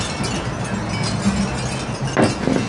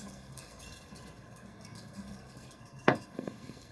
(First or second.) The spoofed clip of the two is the second